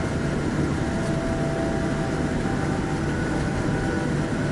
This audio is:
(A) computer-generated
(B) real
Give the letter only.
B